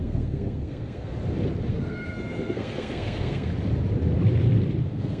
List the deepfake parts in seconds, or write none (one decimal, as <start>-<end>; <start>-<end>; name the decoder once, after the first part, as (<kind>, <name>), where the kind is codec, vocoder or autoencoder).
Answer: 0.0-1.1 (codec, SNAC); 1.7-3.5; 4.8-5.2